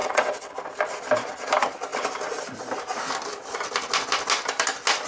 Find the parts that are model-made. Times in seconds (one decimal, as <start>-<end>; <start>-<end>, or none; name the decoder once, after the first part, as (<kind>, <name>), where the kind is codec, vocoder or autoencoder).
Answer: 0.0-0.5 (vocoder, WaveNeXt)

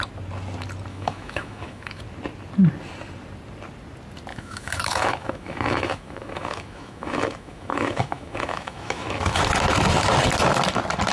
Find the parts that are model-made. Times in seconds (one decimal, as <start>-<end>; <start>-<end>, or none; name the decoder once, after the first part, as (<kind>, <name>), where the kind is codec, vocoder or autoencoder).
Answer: 0.9-2.0 (autoencoder, DAC-VAE); 4.3-9.4

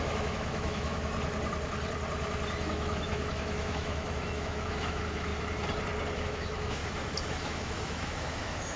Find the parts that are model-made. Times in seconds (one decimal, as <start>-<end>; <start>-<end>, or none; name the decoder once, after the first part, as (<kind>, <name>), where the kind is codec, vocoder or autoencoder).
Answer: 0.0-1.1 (autoencoder, DAC-VAE); 2.6-5.3; 6.2-6.8; 7.3-8.8

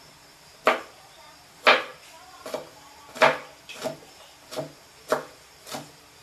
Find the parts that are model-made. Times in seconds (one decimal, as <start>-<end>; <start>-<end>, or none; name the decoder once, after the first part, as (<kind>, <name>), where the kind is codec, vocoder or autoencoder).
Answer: none

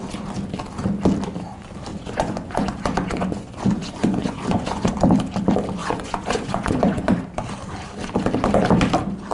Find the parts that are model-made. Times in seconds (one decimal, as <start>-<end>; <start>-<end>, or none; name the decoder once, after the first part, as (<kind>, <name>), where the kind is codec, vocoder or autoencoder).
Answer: 1.9-4.9 (vocoder, Vocos); 5.8-7.1